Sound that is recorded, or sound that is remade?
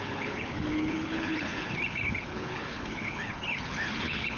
remade